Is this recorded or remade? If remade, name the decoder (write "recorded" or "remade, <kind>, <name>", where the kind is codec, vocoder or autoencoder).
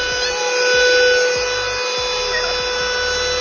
recorded